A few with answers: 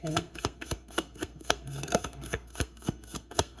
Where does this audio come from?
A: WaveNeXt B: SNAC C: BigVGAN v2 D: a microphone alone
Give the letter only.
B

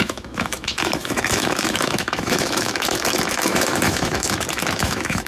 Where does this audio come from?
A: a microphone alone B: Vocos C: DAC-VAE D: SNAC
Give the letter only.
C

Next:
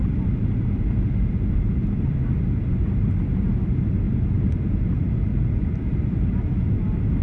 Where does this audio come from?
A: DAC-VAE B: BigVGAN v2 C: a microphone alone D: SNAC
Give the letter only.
B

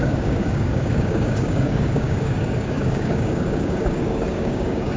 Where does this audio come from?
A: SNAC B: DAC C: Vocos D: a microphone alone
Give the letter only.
B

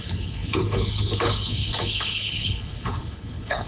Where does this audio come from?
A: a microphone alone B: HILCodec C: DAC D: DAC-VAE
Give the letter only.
B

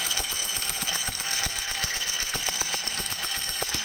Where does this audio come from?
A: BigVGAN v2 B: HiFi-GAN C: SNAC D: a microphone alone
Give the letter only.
C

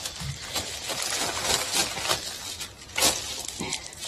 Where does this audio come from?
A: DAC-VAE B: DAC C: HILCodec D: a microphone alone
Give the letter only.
D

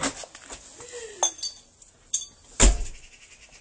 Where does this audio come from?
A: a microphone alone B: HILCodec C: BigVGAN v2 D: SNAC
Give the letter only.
A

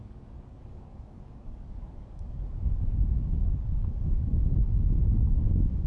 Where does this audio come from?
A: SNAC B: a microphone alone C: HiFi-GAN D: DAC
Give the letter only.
D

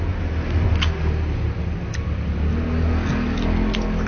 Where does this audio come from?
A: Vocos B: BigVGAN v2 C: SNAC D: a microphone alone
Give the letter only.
D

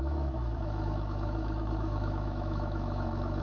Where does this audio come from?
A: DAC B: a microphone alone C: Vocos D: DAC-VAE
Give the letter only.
D